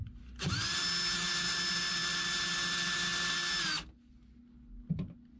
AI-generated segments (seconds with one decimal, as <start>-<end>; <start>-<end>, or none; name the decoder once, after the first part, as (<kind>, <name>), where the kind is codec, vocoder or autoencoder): none